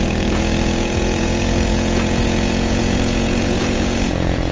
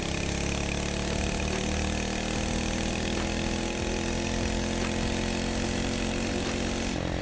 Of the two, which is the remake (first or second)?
first